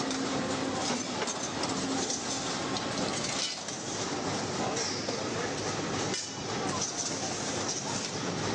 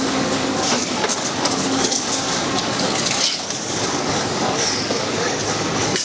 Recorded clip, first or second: first